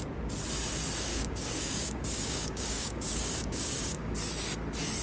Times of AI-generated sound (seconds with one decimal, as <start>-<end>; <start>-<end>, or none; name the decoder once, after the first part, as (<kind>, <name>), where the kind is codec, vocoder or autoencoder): 1.1-4.1 (codec, DAC)